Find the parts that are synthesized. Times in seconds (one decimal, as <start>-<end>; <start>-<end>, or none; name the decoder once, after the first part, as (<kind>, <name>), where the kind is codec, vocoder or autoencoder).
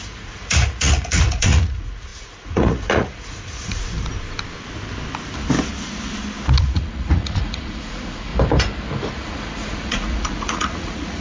0.0-4.1 (vocoder, Vocos); 6.6-8.3; 9.1-11.2